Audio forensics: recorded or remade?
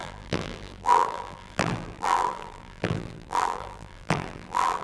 remade